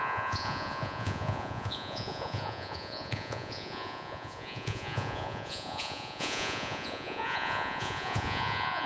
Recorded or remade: remade